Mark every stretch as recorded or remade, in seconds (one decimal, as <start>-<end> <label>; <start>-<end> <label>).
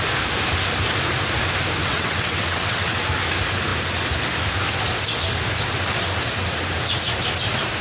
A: 0.0-1.8 recorded; 1.8-3.0 remade; 3.0-7.8 recorded